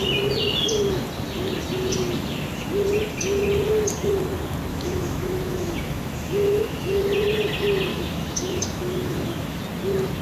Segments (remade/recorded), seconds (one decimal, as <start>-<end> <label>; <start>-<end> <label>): 0.0-4.7 recorded; 4.7-7.0 remade; 7.0-7.9 recorded; 7.9-9.6 remade; 9.6-10.2 recorded